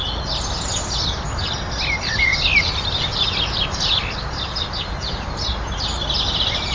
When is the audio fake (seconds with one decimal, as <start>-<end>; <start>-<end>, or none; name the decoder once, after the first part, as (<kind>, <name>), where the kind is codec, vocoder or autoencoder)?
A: none

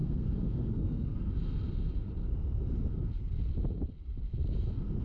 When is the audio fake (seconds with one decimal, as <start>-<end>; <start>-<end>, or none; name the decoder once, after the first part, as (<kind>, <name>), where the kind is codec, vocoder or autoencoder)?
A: 0.0-1.3 (codec, SNAC)

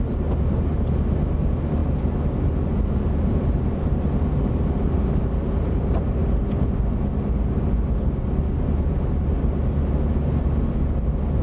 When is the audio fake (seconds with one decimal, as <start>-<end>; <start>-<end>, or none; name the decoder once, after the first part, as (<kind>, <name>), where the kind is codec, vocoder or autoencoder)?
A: none

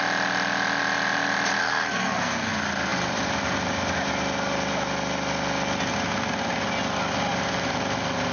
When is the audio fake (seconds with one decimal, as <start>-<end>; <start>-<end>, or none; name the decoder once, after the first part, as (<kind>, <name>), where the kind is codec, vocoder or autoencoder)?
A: 1.6-2.5 (codec, SNAC)

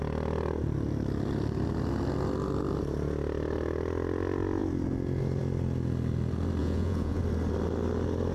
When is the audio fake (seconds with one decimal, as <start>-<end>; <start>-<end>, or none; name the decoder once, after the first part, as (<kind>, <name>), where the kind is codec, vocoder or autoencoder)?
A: 6.6-7.2 (vocoder, Vocos)

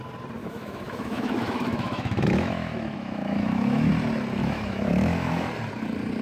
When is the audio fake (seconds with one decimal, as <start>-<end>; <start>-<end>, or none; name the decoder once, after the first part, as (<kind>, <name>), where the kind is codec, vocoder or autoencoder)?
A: 0.4-3.9 (autoencoder, DAC-VAE); 4.4-5.5